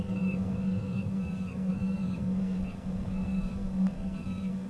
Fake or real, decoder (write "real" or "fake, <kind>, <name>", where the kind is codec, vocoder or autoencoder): fake, codec, SNAC